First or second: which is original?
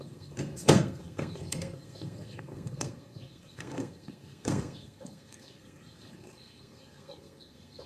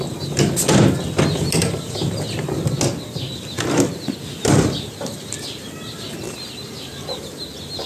second